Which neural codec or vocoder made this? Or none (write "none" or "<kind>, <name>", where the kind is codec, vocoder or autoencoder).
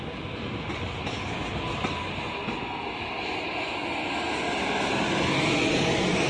none